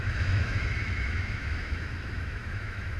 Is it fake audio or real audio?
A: fake